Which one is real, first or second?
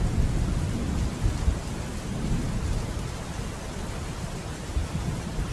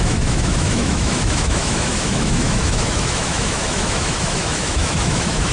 first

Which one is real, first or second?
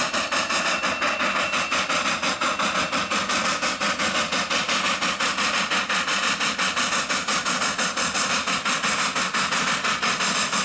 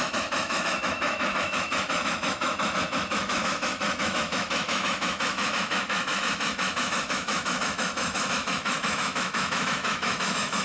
first